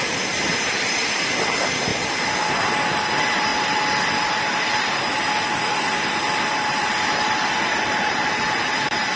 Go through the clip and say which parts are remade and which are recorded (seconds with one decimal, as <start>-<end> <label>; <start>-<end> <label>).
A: 0.0-7.7 recorded; 7.7-8.5 remade; 8.5-9.2 recorded